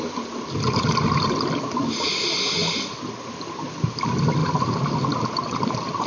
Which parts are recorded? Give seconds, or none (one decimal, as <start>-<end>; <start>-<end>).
0.0-4.4